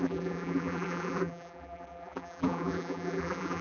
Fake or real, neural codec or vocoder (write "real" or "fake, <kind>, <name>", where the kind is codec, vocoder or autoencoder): fake, vocoder, BigVGAN v2